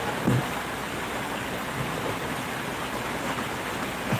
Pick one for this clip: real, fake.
real